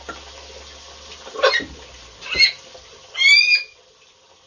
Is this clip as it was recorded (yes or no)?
yes